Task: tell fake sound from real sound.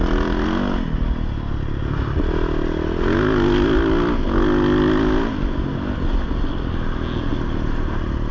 real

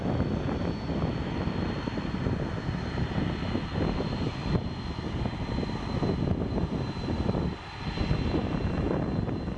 real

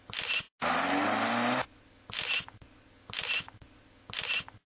real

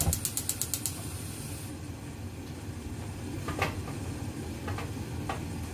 real